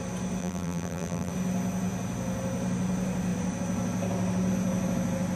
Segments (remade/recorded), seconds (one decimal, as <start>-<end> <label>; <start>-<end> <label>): 0.0-0.4 recorded; 0.4-1.3 remade; 1.3-5.4 recorded